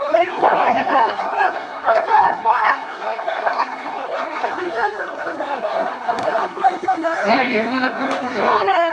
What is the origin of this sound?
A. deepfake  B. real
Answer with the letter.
A